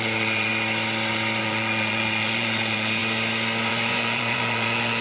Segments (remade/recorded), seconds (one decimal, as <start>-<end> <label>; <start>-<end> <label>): 0.0-0.5 remade; 0.5-1.4 recorded; 1.4-3.0 remade; 3.0-3.7 recorded; 3.7-5.0 remade